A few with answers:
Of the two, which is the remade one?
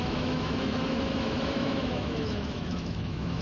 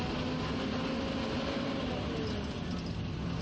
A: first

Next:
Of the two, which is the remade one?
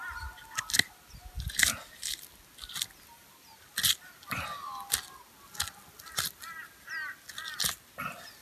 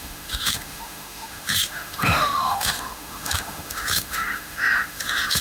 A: second